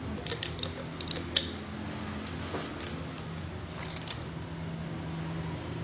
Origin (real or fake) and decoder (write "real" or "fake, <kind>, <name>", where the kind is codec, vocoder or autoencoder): real